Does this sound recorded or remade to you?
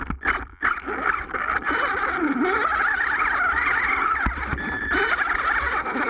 recorded